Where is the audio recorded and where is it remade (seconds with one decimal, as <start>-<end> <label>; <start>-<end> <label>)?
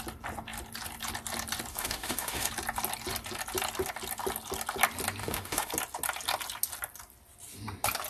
0.0-1.7 recorded; 1.7-2.5 remade; 2.5-5.2 recorded; 5.2-5.7 remade; 5.7-8.1 recorded